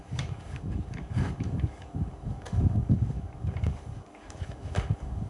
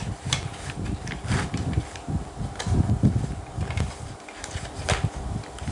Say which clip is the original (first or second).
second